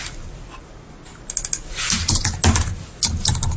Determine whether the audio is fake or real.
real